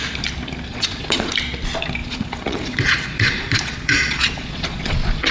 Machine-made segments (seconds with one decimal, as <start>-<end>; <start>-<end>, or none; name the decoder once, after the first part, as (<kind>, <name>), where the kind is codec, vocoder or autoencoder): 0.7-1.3 (vocoder, Vocos); 2.0-5.3